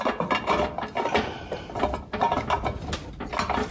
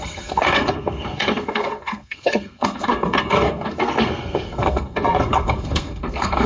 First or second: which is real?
first